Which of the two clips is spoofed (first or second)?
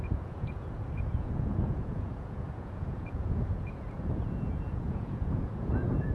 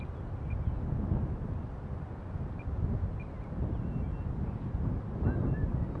first